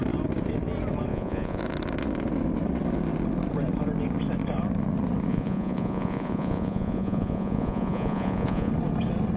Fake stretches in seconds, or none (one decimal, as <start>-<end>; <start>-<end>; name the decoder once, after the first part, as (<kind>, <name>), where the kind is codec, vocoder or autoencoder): 1.1-1.6 (vocoder, Vocos); 5.3-8.7